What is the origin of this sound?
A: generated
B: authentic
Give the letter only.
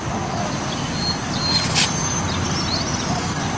B